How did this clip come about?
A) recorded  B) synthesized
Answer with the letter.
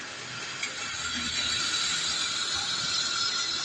A